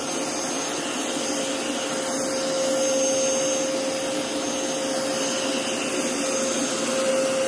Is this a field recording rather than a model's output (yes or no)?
yes